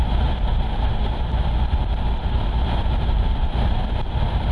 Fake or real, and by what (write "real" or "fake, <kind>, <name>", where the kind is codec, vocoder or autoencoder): fake, vocoder, BigVGAN v2